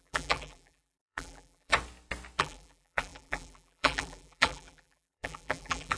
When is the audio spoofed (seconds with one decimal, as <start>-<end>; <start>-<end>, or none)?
0.0-1.7; 2.4-6.0